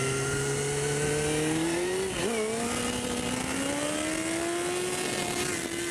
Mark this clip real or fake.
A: real